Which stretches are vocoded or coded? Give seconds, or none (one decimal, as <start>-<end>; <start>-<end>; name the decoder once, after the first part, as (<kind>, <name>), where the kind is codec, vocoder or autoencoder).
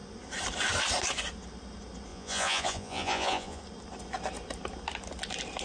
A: 2.1-3.6 (vocoder, Vocos)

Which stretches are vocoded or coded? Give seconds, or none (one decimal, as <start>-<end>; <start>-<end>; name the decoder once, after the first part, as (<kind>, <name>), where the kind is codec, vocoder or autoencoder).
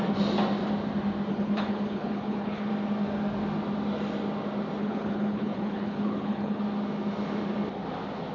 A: 1.3-2.7 (codec, HILCodec); 4.8-6.6